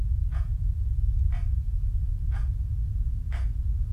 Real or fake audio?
fake